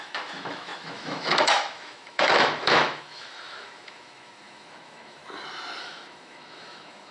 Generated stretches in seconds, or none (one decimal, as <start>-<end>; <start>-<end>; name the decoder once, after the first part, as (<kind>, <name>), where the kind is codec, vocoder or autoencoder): 0.0-5.2 (autoencoder, DAC-VAE); 5.8-7.1